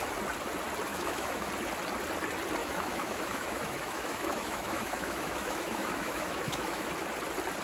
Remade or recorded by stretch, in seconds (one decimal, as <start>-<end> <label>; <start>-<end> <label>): 0.0-0.9 recorded; 0.9-1.5 remade; 1.5-2.6 recorded; 2.6-6.9 remade; 6.9-7.6 recorded